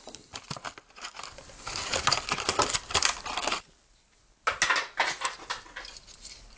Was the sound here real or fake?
real